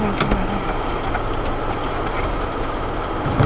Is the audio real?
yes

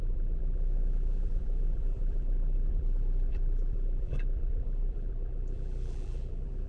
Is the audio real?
no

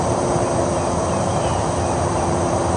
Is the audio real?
no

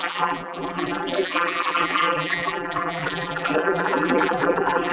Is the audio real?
no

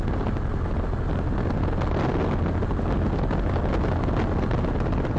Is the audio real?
yes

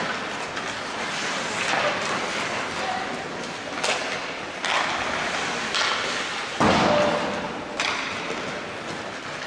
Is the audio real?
yes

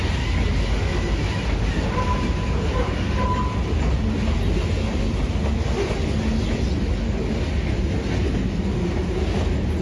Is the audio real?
yes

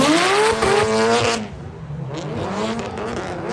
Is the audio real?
yes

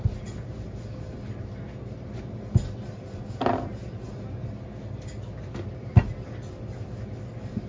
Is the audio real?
yes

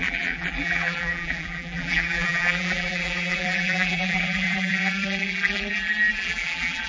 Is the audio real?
no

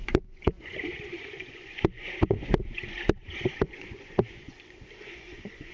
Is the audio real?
no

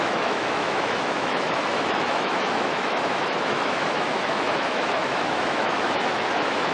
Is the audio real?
no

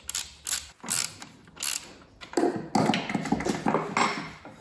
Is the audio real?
yes